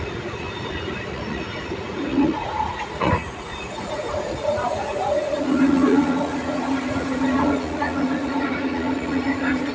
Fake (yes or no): yes